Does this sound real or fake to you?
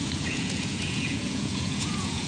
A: fake